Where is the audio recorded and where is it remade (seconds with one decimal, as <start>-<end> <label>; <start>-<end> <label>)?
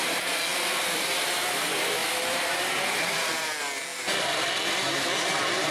0.0-0.5 recorded; 0.5-1.3 remade; 1.3-2.0 recorded; 2.0-3.3 remade; 3.3-3.9 recorded; 3.9-4.5 remade; 4.5-5.7 recorded